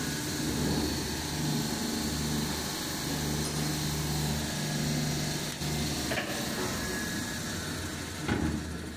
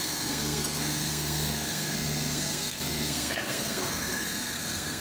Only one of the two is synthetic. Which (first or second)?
second